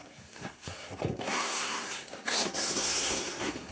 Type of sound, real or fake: fake